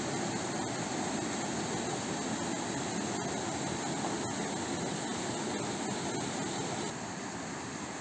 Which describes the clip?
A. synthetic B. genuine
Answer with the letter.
B